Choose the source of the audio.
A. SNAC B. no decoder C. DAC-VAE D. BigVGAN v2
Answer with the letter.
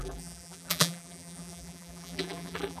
D